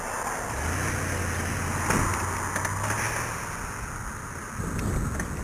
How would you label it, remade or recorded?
recorded